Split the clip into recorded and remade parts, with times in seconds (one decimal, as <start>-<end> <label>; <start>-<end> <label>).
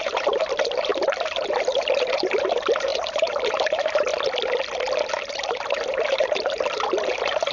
0.0-4.1 remade; 4.1-5.1 recorded; 5.1-7.5 remade